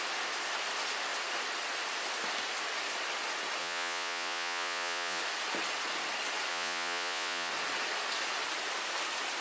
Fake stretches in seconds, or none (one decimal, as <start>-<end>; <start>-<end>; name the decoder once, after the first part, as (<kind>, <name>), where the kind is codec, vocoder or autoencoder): 3.6-5.2 (vocoder, Vocos); 6.5-7.5